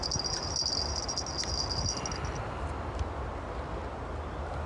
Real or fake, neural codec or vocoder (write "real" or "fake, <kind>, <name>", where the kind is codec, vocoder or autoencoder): real